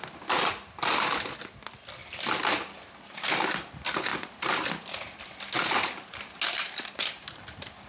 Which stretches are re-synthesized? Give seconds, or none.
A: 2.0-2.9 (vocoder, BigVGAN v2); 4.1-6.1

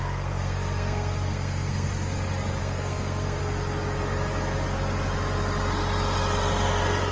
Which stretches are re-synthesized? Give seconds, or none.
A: 0.0-1.9 (codec, SNAC); 2.6-3.4

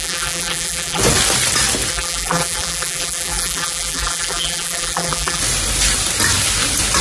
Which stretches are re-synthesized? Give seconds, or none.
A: 0.0-1.0 (vocoder, BigVGAN v2); 1.9-5.4

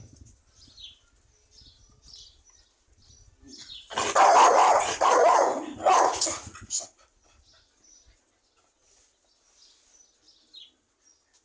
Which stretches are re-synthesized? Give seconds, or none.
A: 4.6-6.9 (vocoder, Vocos)